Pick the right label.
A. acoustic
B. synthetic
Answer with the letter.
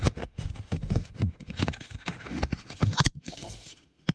B